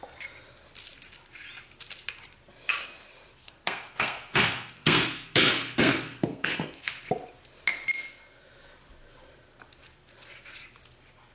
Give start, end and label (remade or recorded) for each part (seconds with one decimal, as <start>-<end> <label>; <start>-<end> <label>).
0.0-3.4 recorded; 3.4-6.9 remade; 6.9-11.3 recorded